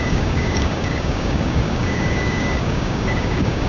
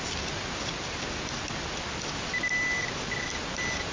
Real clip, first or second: second